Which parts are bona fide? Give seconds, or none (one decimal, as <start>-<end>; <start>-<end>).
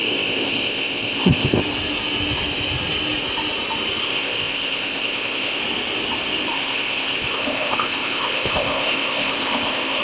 1.6-4.0; 5.6-6.5